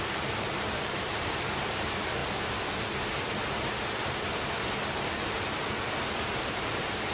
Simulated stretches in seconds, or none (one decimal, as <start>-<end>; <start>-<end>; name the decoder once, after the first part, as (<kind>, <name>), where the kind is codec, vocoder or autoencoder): 0.0-2.2 (vocoder, BigVGAN v2); 6.5-7.1

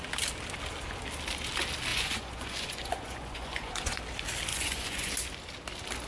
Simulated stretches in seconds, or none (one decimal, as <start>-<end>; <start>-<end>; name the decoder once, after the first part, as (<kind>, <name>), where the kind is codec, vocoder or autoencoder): 1.9-4.0 (vocoder, Vocos); 4.5-5.1

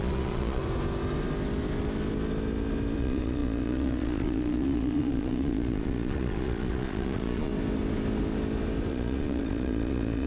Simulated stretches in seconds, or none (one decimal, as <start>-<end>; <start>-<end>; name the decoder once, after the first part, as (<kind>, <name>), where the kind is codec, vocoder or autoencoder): 0.0-0.6 (vocoder, Vocos); 3.0-7.5; 8.9-10.3

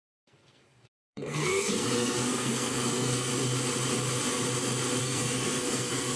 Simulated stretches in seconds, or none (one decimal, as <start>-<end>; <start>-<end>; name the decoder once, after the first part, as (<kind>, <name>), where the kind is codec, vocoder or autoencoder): 0.0-3.3 (codec, SNAC); 5.0-6.2